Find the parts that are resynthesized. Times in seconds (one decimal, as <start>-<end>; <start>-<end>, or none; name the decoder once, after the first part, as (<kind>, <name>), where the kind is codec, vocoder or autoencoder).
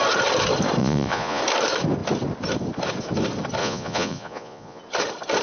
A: 0.8-1.4 (vocoder, Vocos); 3.6-4.8